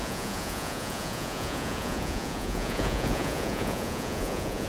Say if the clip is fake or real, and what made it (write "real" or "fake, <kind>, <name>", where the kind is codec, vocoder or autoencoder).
fake, vocoder, Vocos